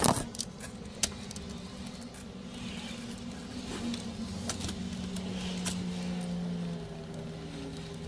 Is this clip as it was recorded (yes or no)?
yes